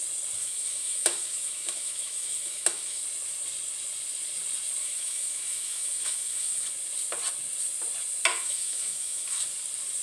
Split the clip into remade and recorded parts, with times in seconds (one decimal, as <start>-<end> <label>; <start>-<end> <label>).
0.0-0.4 recorded; 0.4-3.0 remade; 3.0-4.8 recorded; 4.8-6.7 remade; 6.7-8.3 recorded; 8.3-9.4 remade; 9.4-10.0 recorded